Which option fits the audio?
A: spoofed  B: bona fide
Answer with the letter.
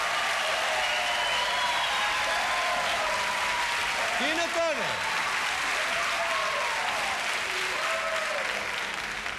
B